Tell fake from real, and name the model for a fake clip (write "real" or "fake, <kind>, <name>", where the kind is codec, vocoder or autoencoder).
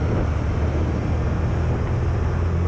real